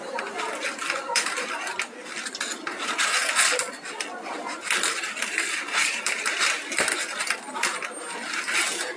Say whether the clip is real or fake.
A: real